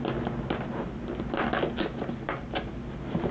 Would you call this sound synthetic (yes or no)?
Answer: no